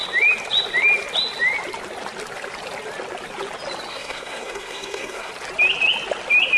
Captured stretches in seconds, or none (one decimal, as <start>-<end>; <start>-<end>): 0.0-3.9; 5.3-6.6